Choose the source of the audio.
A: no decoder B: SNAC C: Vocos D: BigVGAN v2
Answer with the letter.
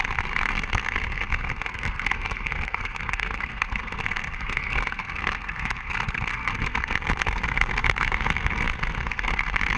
B